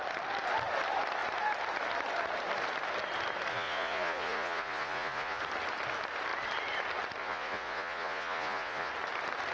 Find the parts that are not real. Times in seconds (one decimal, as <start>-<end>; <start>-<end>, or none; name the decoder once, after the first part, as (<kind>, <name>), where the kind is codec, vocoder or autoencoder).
3.5-5.4 (vocoder, Vocos); 7.2-8.9